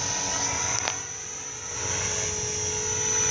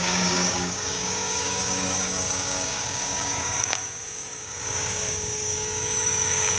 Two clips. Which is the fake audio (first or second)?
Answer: second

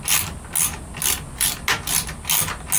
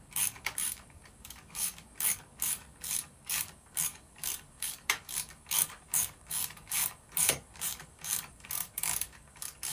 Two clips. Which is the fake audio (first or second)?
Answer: second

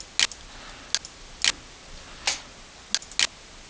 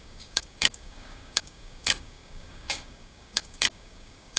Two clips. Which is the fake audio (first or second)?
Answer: second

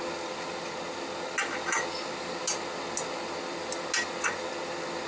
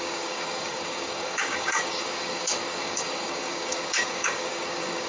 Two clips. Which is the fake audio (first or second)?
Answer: second